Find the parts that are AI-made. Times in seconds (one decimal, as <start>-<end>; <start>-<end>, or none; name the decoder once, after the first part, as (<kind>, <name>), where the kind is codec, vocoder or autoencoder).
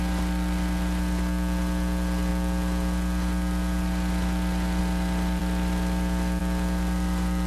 none